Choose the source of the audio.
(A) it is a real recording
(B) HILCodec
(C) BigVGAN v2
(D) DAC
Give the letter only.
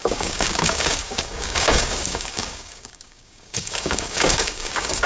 D